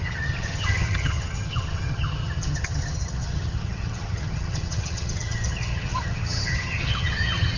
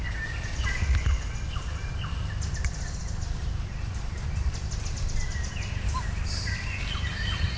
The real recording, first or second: second